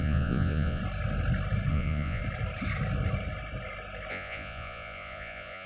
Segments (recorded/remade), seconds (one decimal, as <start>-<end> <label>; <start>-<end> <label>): 0.0-0.8 remade; 0.8-1.7 recorded; 1.7-2.2 remade; 2.2-4.1 recorded; 4.1-5.7 remade